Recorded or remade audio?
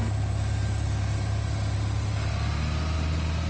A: recorded